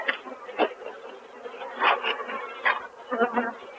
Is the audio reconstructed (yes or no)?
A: no